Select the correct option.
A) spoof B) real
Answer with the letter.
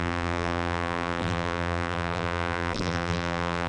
A